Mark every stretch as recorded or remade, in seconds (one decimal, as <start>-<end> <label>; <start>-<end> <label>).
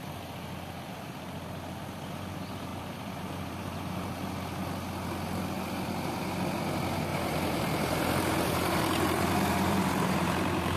0.0-2.7 recorded; 2.7-3.9 remade; 3.9-7.1 recorded; 7.1-10.8 remade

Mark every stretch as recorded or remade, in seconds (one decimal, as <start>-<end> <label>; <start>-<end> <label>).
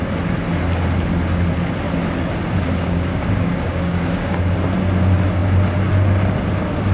0.0-2.6 recorded; 2.6-4.4 remade; 4.4-6.9 recorded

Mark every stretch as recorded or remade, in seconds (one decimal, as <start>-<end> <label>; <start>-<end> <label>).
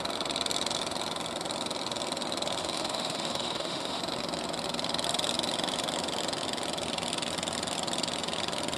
0.0-2.6 recorded; 2.6-4.0 remade; 4.0-8.8 recorded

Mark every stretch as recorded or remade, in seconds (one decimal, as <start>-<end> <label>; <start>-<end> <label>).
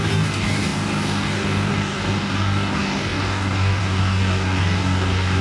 0.0-5.4 remade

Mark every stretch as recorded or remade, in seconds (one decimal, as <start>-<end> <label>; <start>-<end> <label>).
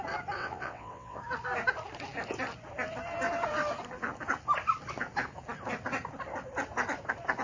0.0-0.4 recorded; 0.4-1.2 remade; 1.2-7.4 recorded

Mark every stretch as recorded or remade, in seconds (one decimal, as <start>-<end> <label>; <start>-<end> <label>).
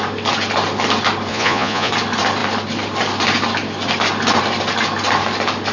0.0-1.3 recorded; 1.3-1.9 remade; 1.9-5.7 recorded